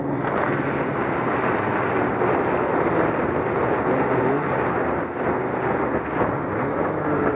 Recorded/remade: recorded